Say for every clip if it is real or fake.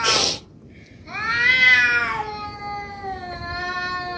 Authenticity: real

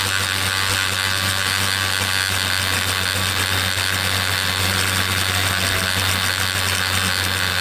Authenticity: real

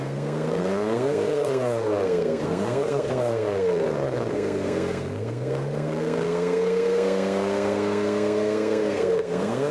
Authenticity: fake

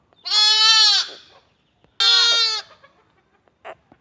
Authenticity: real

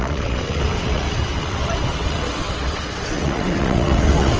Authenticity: fake